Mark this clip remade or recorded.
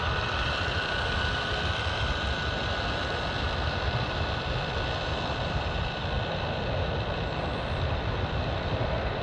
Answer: recorded